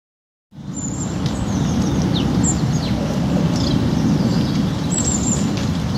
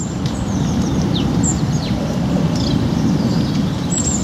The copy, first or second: second